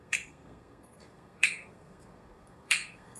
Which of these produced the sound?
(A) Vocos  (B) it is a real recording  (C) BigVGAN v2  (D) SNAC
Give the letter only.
D